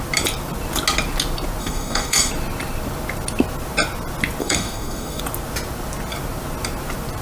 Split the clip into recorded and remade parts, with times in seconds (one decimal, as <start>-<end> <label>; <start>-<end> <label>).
0.0-1.6 recorded; 1.6-2.3 remade; 2.3-4.4 recorded; 4.4-5.2 remade; 5.2-7.2 recorded